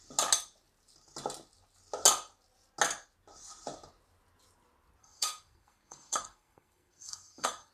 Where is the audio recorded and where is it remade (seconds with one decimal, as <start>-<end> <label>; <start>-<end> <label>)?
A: 0.0-5.0 recorded; 5.0-7.7 remade